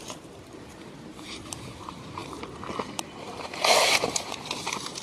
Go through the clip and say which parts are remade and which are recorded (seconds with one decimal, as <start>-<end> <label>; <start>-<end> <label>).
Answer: 0.0-1.4 recorded; 1.4-2.2 remade; 2.2-3.0 recorded; 3.0-5.0 remade